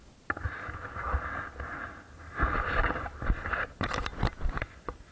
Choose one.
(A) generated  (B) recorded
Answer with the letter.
B